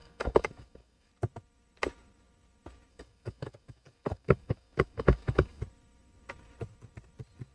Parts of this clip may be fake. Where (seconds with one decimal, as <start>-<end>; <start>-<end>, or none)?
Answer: 0.0-1.1; 2.9-5.6